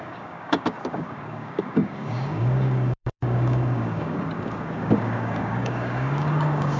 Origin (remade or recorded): remade